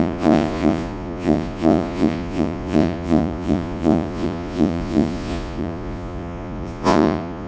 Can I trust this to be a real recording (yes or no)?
no